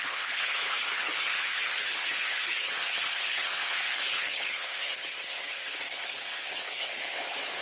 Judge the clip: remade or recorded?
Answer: remade